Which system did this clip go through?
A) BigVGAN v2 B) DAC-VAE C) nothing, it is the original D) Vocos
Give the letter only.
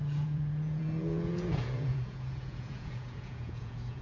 D